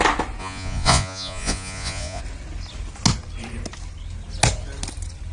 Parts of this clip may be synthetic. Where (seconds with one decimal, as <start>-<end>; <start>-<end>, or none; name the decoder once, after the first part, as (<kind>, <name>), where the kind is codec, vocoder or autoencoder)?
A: 0.4-2.2 (vocoder, Vocos)